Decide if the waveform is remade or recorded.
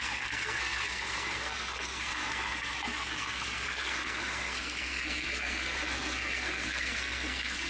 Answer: remade